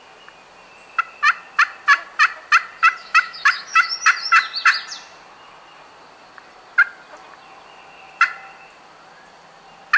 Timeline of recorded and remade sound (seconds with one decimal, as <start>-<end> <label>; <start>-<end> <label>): 0.0-3.0 recorded; 3.0-3.9 remade; 3.9-10.0 recorded